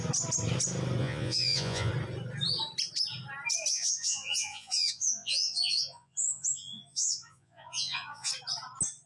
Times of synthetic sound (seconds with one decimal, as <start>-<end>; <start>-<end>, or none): 1.0-1.9; 3.7-8.3